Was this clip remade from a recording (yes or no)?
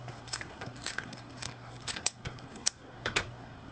yes